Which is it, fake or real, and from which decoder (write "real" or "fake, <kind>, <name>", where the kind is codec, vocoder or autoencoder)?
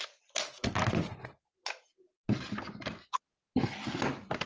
real